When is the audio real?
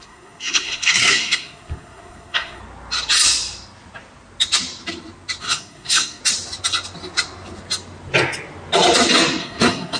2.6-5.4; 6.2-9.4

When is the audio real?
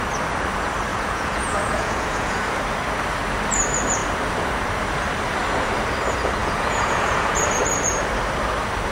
0.0-0.9; 2.6-6.4; 7.4-8.9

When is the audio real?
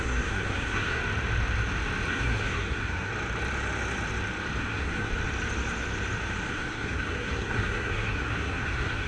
1.0-2.1; 3.1-4.6; 5.1-6.5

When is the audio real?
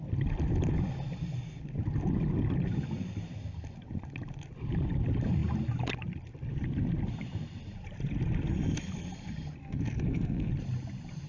0.0-9.6; 10.5-11.3